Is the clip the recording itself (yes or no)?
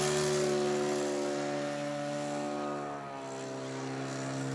yes